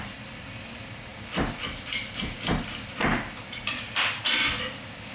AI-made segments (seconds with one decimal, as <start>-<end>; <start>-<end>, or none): none